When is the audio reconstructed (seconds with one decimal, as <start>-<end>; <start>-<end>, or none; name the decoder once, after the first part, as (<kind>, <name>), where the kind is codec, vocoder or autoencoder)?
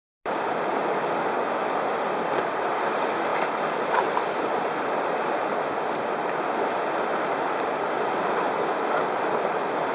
none